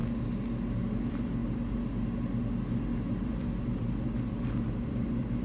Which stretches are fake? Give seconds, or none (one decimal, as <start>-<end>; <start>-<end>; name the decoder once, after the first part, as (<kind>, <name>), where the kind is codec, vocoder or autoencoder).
0.8-1.4 (vocoder, BigVGAN v2); 3.1-5.4